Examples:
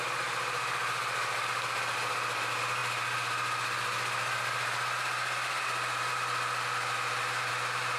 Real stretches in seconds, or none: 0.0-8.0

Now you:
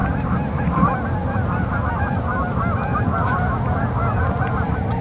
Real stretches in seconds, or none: 0.6-5.0

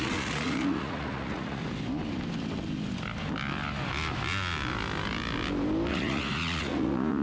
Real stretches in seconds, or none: 1.6-5.9

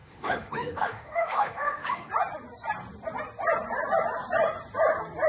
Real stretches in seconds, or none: 2.1-5.3

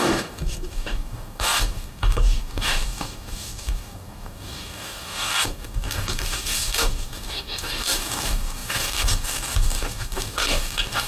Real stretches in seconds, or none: none